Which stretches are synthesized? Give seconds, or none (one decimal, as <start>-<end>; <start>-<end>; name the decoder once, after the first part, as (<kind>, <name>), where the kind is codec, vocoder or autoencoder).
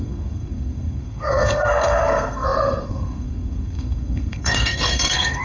0.0-5.4 (codec, SNAC)